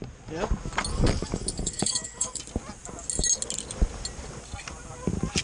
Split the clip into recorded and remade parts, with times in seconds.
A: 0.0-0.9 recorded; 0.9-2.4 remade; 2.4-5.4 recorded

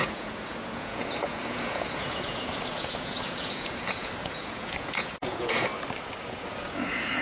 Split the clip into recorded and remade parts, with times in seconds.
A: 0.0-5.7 remade; 5.7-6.2 recorded; 6.2-7.2 remade

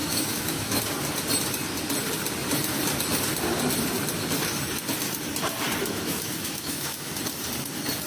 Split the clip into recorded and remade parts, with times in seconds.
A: 0.0-0.8 remade; 0.8-5.8 recorded; 5.8-7.1 remade; 7.1-8.1 recorded